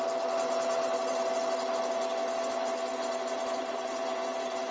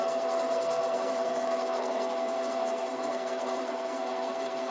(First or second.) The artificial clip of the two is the second